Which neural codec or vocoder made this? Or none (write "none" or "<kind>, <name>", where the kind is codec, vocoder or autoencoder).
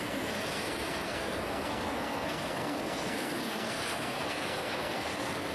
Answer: codec, SNAC